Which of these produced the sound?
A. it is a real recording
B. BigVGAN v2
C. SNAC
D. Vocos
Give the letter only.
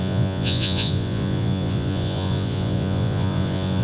D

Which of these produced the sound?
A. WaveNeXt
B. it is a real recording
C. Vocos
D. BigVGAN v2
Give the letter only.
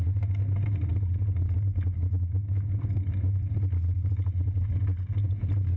B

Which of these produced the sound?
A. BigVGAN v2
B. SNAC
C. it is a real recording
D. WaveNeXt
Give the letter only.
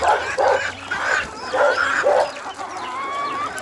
C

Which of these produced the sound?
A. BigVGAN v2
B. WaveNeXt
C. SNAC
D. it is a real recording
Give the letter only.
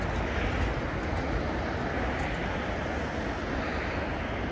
D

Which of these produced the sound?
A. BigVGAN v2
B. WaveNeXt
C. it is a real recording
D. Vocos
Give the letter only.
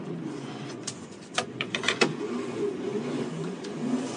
D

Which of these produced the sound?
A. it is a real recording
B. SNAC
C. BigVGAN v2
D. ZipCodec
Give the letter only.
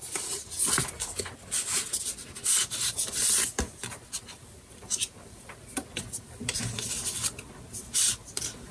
A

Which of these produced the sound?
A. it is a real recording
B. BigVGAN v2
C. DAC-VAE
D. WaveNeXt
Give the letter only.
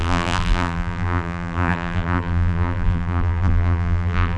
B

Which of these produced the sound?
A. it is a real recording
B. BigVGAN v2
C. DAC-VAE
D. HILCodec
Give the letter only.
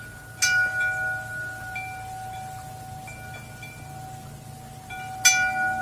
A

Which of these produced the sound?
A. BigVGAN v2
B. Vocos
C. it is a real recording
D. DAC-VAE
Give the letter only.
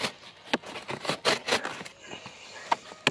C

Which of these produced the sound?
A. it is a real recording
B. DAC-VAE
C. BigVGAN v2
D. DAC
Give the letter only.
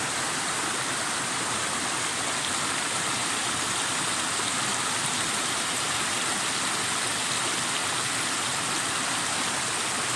A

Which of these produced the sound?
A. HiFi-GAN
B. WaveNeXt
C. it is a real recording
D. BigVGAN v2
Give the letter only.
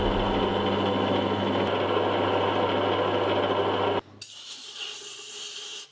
C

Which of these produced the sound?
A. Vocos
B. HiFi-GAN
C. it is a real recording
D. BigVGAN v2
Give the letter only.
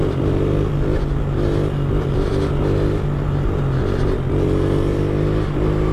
C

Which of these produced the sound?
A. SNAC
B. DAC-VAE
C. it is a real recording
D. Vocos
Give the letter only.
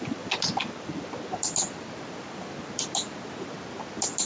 C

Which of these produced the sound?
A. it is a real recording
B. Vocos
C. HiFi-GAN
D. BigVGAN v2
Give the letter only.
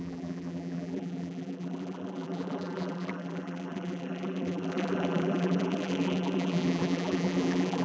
D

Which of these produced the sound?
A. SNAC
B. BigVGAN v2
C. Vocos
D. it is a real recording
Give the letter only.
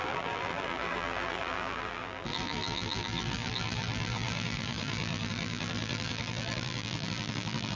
B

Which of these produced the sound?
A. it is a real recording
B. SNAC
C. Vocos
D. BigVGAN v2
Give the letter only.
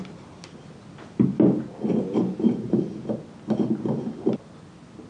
A